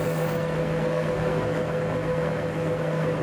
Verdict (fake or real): fake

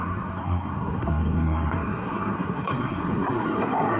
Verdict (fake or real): fake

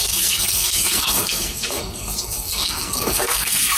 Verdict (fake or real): fake